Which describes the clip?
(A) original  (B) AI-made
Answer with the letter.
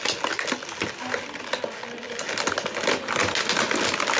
A